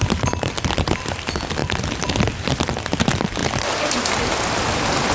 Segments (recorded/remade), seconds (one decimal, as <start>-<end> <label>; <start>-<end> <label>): 0.0-5.1 recorded